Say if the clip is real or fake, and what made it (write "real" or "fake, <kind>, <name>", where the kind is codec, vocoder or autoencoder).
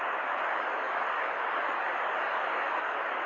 fake, codec, DAC